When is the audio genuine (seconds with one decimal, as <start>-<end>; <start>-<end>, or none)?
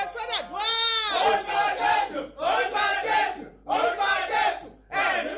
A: 0.0-5.4